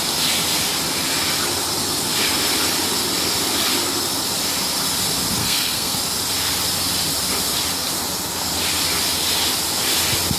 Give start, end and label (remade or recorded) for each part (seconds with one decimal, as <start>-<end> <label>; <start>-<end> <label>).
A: 0.0-5.4 recorded; 5.4-6.0 remade; 6.0-10.4 recorded